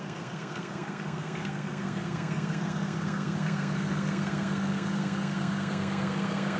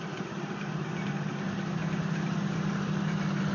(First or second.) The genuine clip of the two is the second